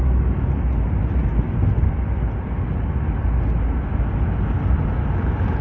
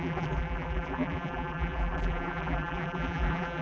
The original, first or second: first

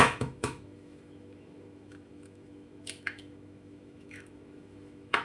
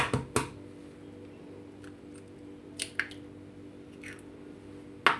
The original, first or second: second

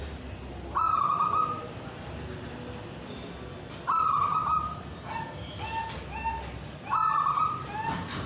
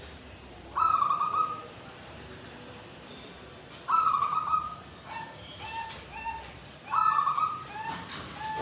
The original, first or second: first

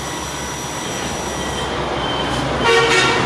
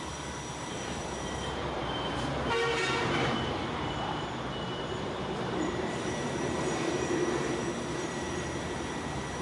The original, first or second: first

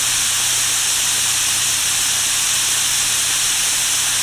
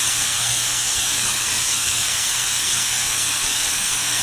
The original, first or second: first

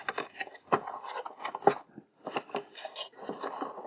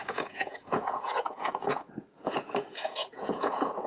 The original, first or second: first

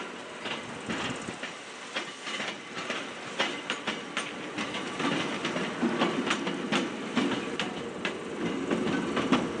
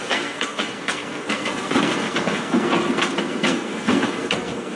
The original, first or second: first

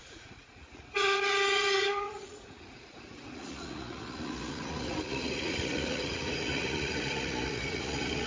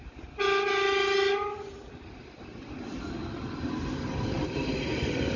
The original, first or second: second